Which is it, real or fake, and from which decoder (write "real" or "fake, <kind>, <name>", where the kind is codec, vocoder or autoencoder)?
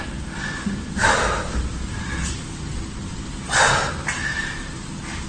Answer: real